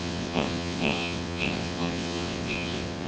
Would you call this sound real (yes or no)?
no